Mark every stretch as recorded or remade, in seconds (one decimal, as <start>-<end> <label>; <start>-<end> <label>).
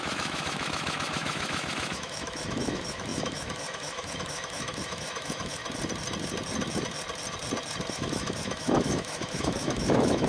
0.0-5.6 remade; 5.6-7.9 recorded; 7.9-10.3 remade